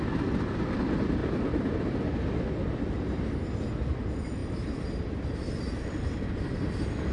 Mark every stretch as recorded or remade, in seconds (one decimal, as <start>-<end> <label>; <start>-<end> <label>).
0.0-7.1 recorded